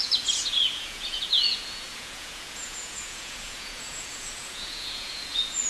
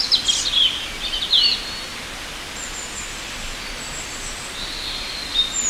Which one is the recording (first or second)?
second